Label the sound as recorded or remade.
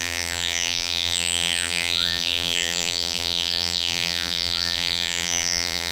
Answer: remade